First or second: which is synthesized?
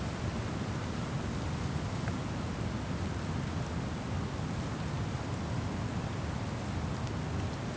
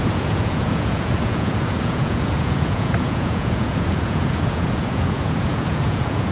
second